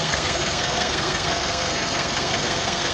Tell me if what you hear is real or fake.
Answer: fake